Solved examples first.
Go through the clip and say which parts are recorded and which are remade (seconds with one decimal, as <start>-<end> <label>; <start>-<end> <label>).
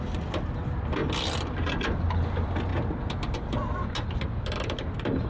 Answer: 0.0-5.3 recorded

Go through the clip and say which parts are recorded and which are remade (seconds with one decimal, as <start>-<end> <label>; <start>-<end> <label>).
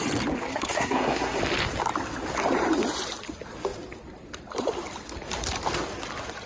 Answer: 0.0-0.5 recorded; 0.5-1.4 remade; 1.4-6.5 recorded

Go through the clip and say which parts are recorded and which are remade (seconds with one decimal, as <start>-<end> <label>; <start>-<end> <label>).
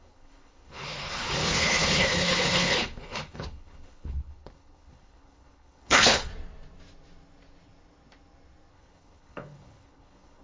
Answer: 0.0-6.3 remade; 6.3-8.7 recorded; 8.7-10.4 remade